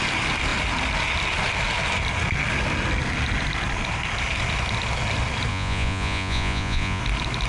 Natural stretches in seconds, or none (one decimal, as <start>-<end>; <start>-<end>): 0.0-5.5; 7.0-7.5